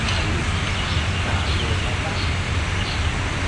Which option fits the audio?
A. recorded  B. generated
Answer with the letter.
A